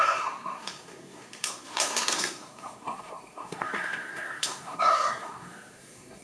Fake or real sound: fake